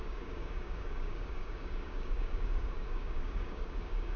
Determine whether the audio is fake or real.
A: fake